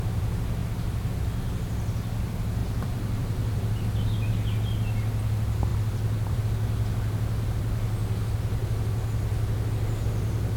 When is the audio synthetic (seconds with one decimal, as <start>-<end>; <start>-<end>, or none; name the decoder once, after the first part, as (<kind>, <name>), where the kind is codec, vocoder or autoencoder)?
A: 2.6-3.8 (vocoder, BigVGAN v2); 5.7-6.4